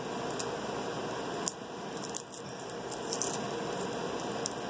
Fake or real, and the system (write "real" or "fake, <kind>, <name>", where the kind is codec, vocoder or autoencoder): real